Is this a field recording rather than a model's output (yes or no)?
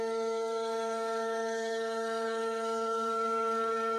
no